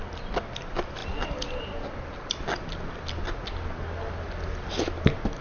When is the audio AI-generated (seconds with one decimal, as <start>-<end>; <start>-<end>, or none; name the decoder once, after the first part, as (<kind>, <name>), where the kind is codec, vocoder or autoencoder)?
none